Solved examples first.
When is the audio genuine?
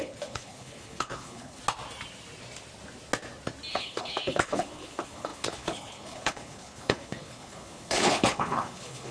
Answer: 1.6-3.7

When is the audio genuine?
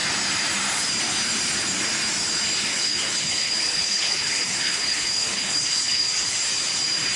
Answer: 0.0-2.7; 6.4-7.2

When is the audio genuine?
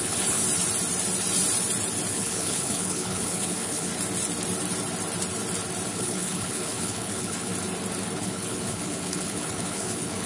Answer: 0.4-2.1; 3.9-5.9; 7.5-8.2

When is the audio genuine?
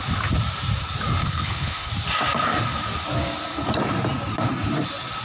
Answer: 0.0-1.2; 1.9-5.2